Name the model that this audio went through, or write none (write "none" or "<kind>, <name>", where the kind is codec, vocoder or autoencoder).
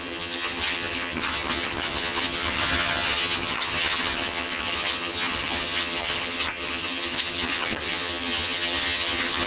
vocoder, HiFi-GAN